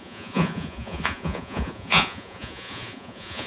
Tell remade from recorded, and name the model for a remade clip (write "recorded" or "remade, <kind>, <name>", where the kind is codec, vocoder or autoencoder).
remade, vocoder, Vocos